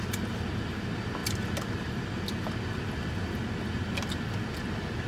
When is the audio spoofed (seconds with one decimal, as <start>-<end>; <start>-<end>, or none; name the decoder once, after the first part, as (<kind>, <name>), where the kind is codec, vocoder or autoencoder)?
none